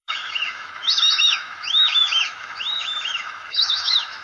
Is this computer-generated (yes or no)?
yes